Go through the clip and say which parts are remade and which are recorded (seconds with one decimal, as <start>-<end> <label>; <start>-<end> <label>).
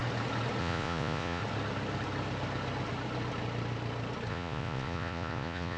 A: 0.0-0.6 recorded; 0.6-1.4 remade; 1.4-4.3 recorded; 4.3-5.8 remade